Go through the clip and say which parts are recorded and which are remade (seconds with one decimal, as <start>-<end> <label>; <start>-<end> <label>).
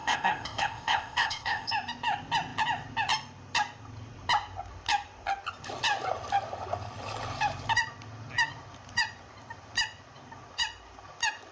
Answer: 0.0-1.7 remade; 1.7-11.5 recorded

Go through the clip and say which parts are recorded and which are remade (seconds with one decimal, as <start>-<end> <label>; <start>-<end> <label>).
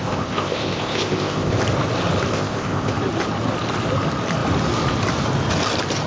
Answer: 0.0-1.5 remade; 1.5-2.3 recorded; 2.3-2.9 remade; 2.9-6.1 recorded